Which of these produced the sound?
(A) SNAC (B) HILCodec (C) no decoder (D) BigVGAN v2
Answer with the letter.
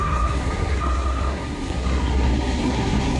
A